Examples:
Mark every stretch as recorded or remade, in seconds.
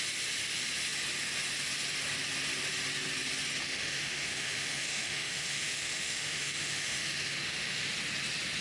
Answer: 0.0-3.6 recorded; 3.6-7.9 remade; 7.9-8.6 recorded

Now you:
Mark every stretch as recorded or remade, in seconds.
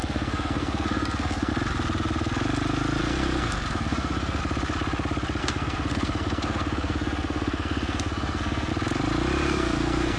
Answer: 0.0-1.5 remade; 1.5-3.0 recorded; 3.0-4.4 remade; 4.4-5.4 recorded; 5.4-8.7 remade; 8.7-9.4 recorded; 9.4-10.2 remade